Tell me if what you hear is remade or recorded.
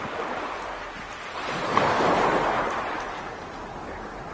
recorded